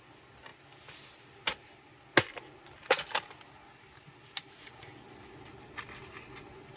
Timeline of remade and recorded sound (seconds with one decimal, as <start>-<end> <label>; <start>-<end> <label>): 0.0-6.8 recorded